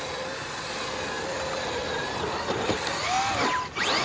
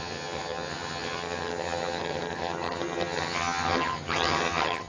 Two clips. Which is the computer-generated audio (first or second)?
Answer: second